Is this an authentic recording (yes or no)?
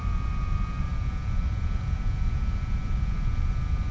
no